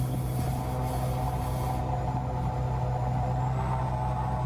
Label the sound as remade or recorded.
recorded